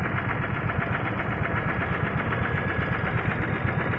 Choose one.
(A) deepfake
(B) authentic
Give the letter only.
B